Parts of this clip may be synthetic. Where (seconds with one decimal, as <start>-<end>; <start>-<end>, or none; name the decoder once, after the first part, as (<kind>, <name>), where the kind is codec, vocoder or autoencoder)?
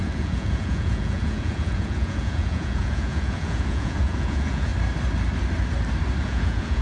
0.0-4.7 (vocoder, Vocos); 6.2-6.8